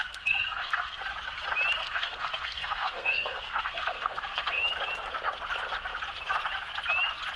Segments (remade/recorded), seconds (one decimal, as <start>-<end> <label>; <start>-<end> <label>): 0.0-1.0 remade; 1.0-1.8 recorded; 1.8-4.6 remade; 4.6-7.4 recorded